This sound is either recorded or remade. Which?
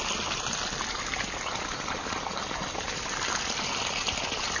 recorded